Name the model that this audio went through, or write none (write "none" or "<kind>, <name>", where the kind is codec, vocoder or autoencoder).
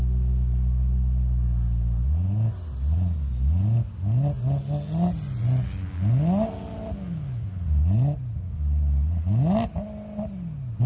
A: none